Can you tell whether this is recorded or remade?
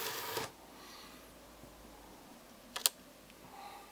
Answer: recorded